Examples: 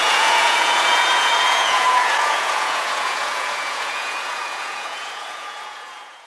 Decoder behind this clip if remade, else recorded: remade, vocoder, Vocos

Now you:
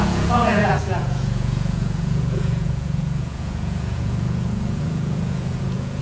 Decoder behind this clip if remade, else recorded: remade, vocoder, Vocos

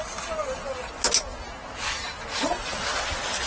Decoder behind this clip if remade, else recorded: recorded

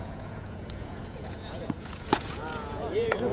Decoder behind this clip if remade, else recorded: remade, vocoder, Vocos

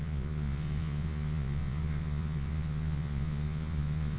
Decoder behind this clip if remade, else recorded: remade, vocoder, Vocos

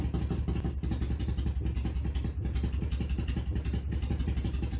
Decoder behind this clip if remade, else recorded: recorded